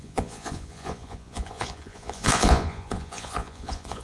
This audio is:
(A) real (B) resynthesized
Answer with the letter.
B